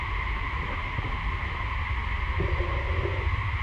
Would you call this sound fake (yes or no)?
no